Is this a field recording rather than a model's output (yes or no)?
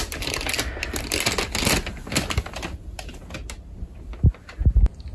yes